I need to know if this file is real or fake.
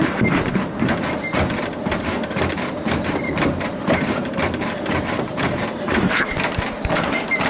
fake